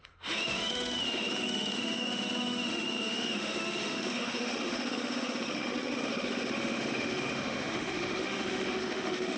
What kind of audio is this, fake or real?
fake